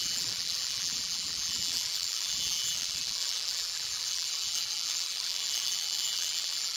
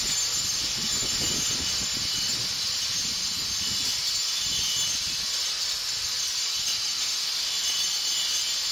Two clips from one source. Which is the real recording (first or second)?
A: second